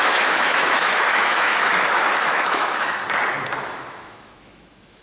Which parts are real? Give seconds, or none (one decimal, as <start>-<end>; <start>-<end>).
3.0-3.6

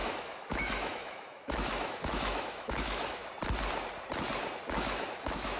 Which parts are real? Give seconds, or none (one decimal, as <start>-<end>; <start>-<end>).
3.2-4.7

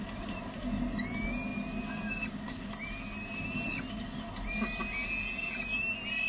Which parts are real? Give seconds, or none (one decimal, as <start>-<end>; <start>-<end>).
0.0-6.3

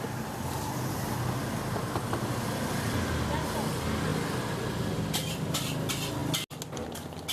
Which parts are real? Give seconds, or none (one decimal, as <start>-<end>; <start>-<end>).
0.0-7.3

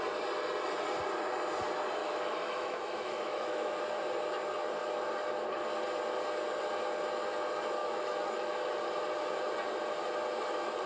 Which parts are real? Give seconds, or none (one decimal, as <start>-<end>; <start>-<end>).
0.0-2.0; 3.8-7.8; 8.8-10.9

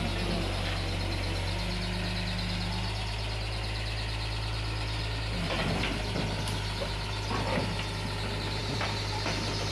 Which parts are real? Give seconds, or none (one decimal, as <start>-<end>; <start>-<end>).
0.0-9.7